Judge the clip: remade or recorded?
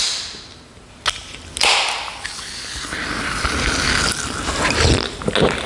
recorded